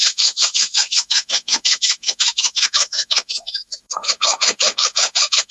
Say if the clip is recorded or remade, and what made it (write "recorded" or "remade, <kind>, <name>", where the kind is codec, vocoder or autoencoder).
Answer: remade, autoencoder, DAC-VAE